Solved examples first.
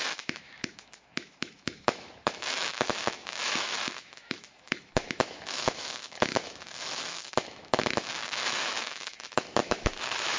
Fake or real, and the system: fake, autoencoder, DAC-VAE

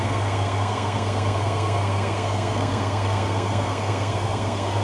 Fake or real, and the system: fake, codec, SNAC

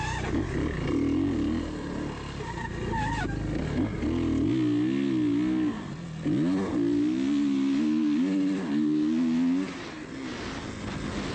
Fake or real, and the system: real